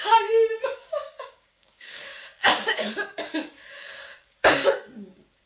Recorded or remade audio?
remade